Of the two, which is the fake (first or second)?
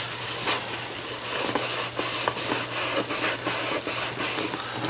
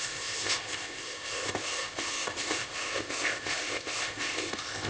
second